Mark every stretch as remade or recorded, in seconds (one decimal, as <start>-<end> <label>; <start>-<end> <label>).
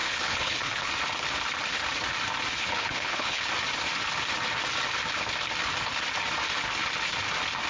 0.0-0.9 remade; 0.9-2.6 recorded; 2.6-3.5 remade; 3.5-7.7 recorded